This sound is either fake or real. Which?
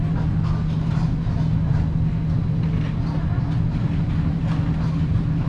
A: real